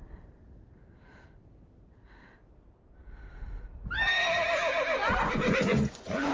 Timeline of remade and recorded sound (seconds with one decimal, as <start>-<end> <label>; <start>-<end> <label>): 0.0-5.0 recorded; 5.0-6.3 remade